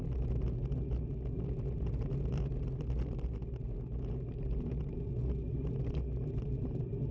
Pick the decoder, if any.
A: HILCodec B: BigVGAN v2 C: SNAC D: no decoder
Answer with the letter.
D